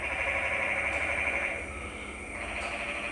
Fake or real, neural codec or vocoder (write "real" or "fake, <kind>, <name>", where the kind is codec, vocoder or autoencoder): real